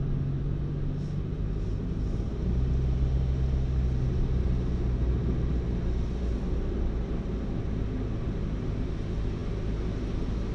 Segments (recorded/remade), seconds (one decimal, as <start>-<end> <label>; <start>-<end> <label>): 0.0-10.5 recorded